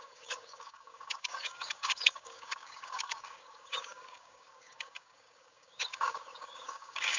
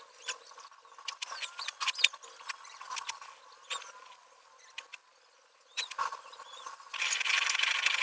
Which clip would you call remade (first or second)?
first